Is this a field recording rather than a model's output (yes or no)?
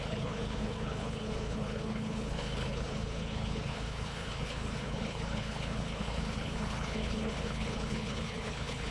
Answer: no